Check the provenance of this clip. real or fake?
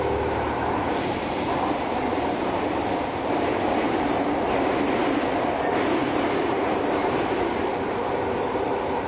fake